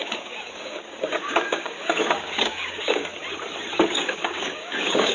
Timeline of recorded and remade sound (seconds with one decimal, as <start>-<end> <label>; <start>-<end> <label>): 0.0-3.2 remade; 3.2-3.9 recorded; 3.9-5.1 remade